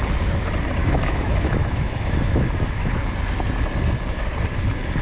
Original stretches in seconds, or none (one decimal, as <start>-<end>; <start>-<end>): 0.0-0.8; 2.9-5.0